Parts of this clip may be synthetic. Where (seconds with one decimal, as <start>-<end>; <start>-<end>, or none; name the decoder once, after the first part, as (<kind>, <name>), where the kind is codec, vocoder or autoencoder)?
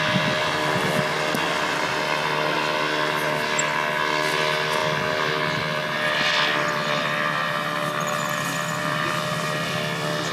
none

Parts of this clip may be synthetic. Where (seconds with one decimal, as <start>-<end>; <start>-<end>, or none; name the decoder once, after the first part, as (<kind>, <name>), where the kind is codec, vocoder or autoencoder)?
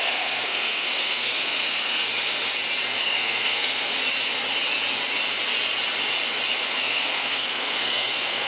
0.0-2.1 (codec, SNAC); 3.0-3.9; 6.8-8.5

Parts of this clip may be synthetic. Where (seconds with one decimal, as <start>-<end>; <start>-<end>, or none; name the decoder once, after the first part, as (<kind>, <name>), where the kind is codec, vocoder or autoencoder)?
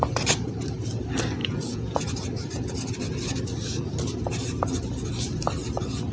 1.4-2.0 (vocoder, Vocos)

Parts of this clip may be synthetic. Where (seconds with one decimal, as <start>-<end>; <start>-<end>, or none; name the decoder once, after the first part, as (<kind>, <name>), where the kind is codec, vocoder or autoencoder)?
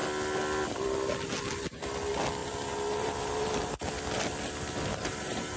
2.4-3.9 (vocoder, BigVGAN v2); 4.9-5.6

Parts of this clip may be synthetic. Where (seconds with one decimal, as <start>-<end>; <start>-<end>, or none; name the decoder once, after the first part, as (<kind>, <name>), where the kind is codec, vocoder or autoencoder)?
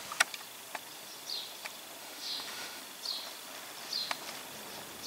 2.0-2.8 (autoencoder, DAC-VAE)